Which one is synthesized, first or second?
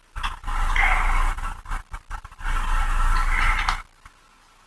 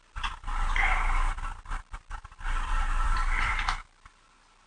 second